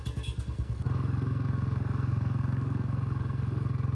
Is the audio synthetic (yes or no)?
yes